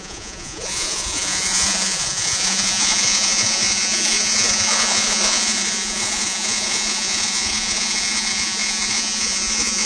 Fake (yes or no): yes